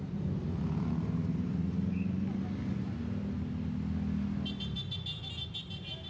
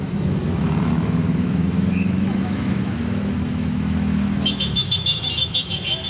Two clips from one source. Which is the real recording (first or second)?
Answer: first